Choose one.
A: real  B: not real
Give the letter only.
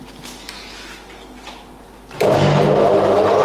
A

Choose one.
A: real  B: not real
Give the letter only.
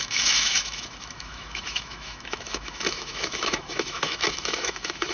B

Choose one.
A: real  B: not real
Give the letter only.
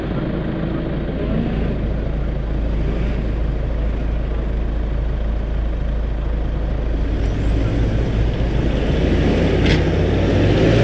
A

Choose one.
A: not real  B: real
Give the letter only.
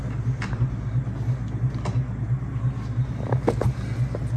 B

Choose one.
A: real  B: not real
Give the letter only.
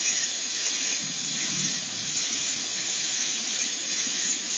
B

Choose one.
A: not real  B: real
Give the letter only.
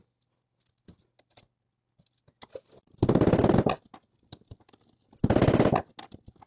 B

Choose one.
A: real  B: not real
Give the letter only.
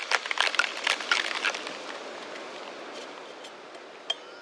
A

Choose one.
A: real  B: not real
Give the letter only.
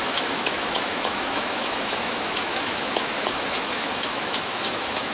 B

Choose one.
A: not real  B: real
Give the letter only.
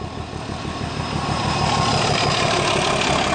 B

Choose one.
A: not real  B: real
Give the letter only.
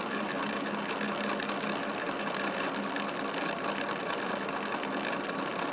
B